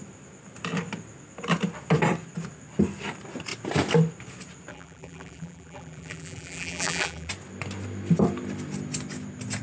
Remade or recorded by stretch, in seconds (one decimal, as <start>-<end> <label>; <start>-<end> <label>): 0.0-4.7 recorded; 4.7-7.3 remade; 7.3-9.6 recorded

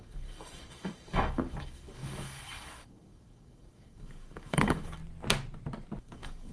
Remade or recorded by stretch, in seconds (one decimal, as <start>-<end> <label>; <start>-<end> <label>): 0.0-5.0 remade; 5.0-6.0 recorded; 6.0-6.5 remade

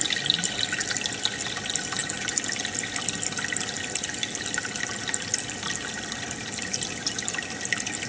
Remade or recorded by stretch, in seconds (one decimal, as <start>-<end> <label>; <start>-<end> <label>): 0.0-8.1 recorded

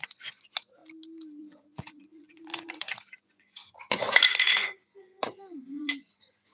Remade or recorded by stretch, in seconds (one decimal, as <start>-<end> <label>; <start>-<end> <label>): 0.0-0.8 remade; 0.8-1.4 recorded; 1.4-6.5 remade

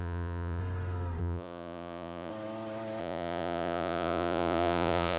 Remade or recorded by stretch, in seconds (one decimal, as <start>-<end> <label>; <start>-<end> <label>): 0.0-0.6 remade; 0.6-1.2 recorded; 1.2-2.3 remade; 2.3-3.0 recorded; 3.0-5.2 remade